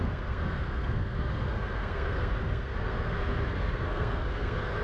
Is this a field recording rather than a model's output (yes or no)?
no